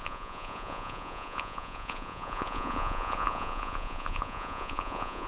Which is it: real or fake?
fake